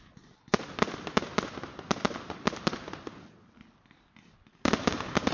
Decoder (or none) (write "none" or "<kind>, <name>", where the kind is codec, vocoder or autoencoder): none